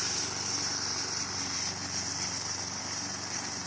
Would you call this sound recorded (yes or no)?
no